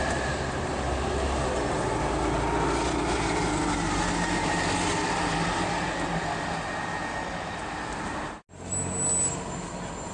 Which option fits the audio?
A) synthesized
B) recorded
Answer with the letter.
B